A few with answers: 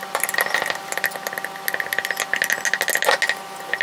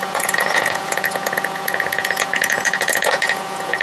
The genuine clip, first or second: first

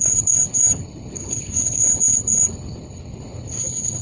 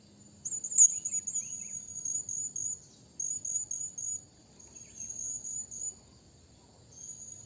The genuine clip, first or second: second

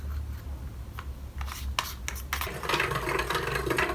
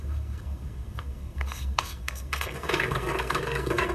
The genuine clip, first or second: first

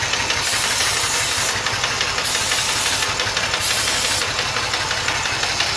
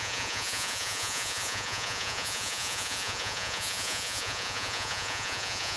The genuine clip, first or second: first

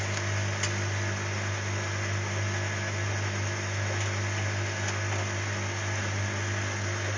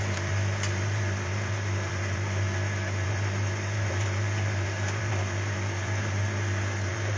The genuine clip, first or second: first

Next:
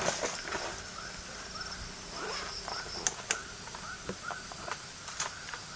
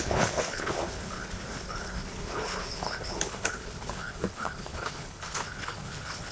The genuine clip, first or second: first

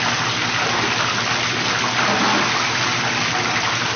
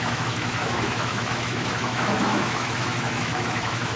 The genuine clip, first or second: first